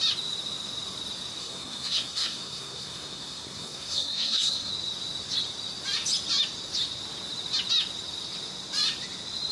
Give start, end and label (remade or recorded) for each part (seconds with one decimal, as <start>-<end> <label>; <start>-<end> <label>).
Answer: 0.0-1.4 recorded; 1.4-4.7 remade; 4.7-9.5 recorded